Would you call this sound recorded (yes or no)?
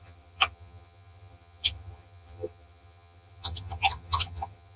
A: no